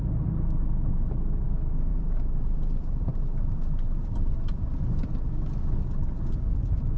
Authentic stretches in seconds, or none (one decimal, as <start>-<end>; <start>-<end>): 0.0-1.9; 4.3-7.0